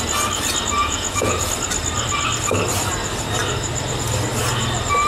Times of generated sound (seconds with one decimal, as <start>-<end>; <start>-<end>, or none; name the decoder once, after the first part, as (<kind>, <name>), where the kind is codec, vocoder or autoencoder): 0.8-1.5 (vocoder, Vocos)